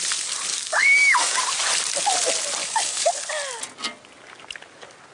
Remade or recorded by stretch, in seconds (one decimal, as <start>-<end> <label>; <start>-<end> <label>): 0.0-0.5 recorded; 0.5-1.4 remade; 1.4-2.6 recorded; 2.6-3.1 remade; 3.1-5.1 recorded